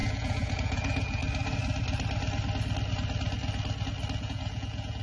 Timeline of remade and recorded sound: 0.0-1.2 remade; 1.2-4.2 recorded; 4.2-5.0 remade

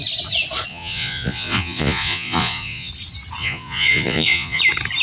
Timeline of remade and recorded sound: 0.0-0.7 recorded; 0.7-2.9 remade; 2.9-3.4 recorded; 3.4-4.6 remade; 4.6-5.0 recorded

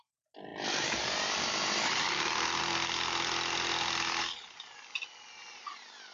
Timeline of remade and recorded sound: 0.0-6.1 recorded

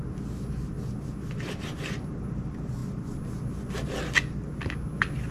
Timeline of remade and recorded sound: 0.0-5.3 recorded

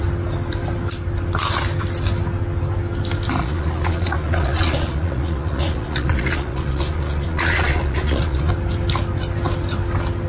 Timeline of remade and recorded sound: 0.0-3.4 recorded; 3.4-8.5 remade; 8.5-10.3 recorded